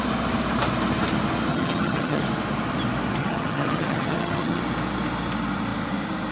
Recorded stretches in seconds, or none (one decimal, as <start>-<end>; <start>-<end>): 0.0-1.5; 2.2-3.2; 4.6-6.3